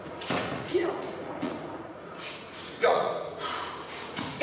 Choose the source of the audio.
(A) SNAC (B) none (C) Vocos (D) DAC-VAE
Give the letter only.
C